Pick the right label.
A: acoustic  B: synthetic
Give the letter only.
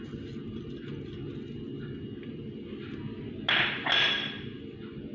A